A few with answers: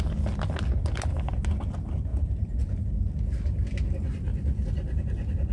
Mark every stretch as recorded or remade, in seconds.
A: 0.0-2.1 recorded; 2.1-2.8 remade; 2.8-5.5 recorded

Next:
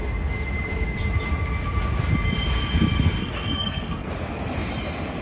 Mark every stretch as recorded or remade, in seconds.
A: 0.0-3.2 recorded; 3.2-4.1 remade; 4.1-5.2 recorded

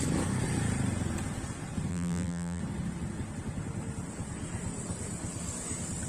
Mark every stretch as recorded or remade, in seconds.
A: 0.0-1.9 recorded; 1.9-2.6 remade; 2.6-6.1 recorded

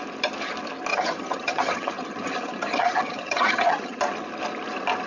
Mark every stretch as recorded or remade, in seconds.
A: 0.0-0.9 recorded; 0.9-4.0 remade; 4.0-5.1 recorded

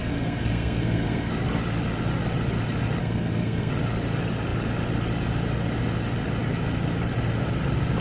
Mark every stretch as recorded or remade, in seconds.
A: 0.0-1.3 remade; 1.3-3.0 recorded; 3.0-3.7 remade; 3.7-8.0 recorded

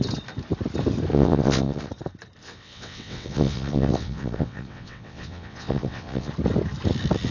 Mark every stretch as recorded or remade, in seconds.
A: 0.0-1.1 recorded; 1.1-1.9 remade; 1.9-2.4 recorded; 2.4-6.3 remade; 6.3-7.3 recorded

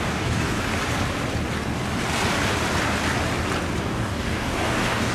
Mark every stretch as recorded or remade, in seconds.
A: 0.0-0.7 remade; 0.7-3.8 recorded; 3.8-5.1 remade

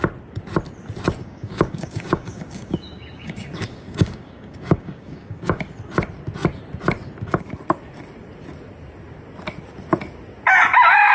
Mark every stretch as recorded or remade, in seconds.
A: 0.0-1.2 recorded; 1.2-5.6 remade; 5.6-11.1 recorded